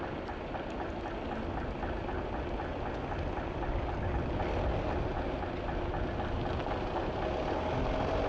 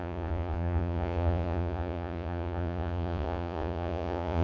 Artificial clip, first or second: second